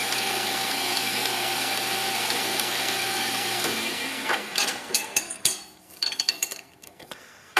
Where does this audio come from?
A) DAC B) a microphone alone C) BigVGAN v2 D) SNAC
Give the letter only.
D